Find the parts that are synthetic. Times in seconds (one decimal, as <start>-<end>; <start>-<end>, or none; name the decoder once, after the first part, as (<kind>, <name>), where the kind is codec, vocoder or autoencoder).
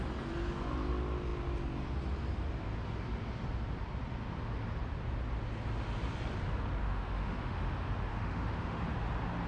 6.8-7.6 (autoencoder, DAC-VAE); 8.1-8.8